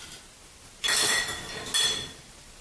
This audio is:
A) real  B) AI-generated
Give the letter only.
A